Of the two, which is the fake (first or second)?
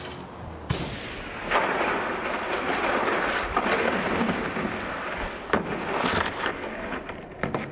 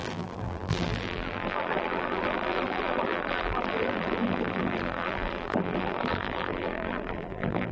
second